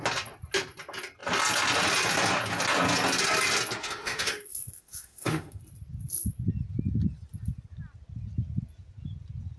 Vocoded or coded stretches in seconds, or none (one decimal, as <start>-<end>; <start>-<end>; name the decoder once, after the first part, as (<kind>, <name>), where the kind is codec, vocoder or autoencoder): 3.8-5.6 (autoencoder, DAC-VAE)